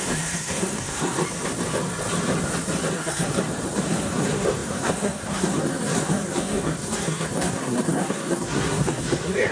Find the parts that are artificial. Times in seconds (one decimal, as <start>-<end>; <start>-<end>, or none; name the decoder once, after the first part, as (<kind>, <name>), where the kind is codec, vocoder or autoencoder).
0.0-1.2 (codec, SNAC); 2.9-3.4; 3.9-9.5

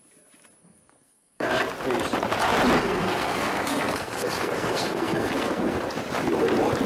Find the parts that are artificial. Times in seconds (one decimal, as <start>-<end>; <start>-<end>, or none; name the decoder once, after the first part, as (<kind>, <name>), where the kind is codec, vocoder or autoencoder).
0.6-1.5 (codec, SNAC); 2.8-5.8

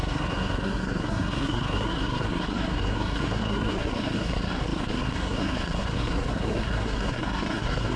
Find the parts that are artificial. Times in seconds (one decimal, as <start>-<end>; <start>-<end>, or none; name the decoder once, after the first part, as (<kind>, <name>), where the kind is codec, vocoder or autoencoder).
0.0-8.0 (codec, SNAC)

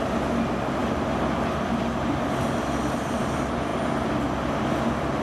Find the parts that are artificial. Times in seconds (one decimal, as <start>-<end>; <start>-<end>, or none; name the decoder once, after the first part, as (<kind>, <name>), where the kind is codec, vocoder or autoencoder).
none

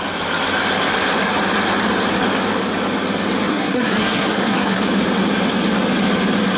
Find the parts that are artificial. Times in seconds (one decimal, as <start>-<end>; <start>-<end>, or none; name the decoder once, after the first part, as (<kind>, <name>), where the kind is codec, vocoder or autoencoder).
3.5-4.8 (codec, SNAC)

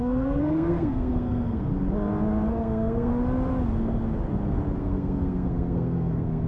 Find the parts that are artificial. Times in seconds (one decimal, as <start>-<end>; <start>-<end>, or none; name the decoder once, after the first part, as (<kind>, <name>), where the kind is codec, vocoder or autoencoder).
0.0-1.7 (codec, SNAC); 2.5-3.1; 4.8-6.5

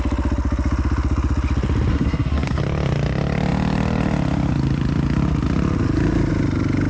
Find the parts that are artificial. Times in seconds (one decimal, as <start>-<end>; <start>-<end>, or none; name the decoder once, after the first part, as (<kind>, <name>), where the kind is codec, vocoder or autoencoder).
1.9-2.6 (codec, SNAC)

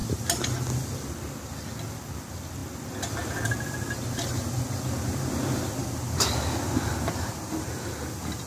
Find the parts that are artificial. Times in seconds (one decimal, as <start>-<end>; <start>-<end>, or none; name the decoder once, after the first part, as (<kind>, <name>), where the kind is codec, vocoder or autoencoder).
none